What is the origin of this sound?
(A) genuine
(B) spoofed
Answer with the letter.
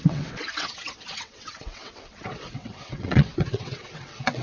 B